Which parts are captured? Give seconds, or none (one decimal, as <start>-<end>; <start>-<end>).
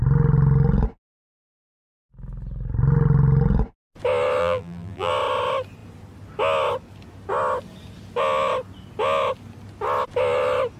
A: 0.0-4.4; 5.1-10.8